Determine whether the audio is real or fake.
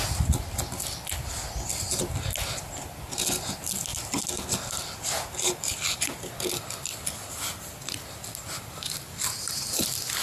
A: real